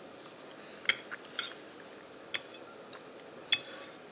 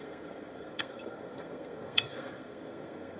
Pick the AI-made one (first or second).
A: second